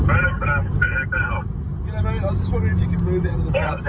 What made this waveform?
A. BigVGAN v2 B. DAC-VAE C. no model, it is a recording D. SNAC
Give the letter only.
C